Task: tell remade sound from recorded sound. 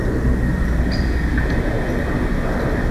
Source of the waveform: recorded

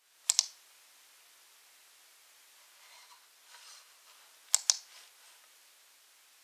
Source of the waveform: recorded